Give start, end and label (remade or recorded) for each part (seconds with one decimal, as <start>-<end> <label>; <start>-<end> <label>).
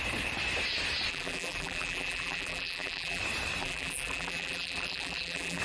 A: 0.0-1.1 recorded; 1.1-3.2 remade; 3.2-3.6 recorded; 3.6-5.6 remade